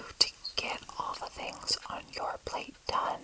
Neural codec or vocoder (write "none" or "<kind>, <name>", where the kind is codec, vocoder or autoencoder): vocoder, BigVGAN v2